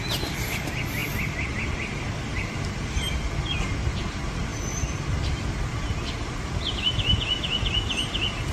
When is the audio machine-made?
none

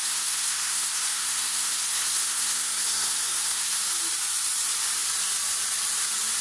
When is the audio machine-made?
0.0-3.8 (codec, SNAC)